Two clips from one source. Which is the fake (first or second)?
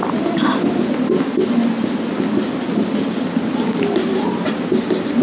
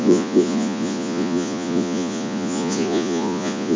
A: second